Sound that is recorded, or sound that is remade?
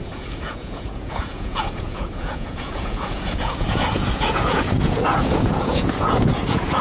remade